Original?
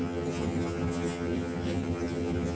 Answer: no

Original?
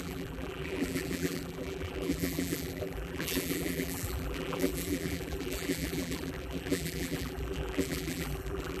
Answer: no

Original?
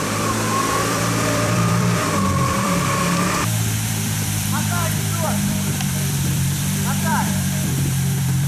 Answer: no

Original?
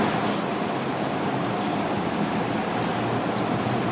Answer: yes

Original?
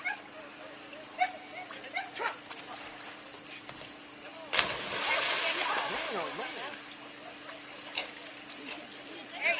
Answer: yes